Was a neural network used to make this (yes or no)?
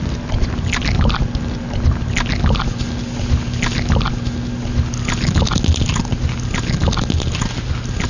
no